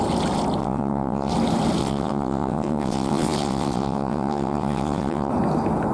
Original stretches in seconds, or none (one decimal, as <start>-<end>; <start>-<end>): 0.0-0.6; 1.3-1.8; 5.3-5.9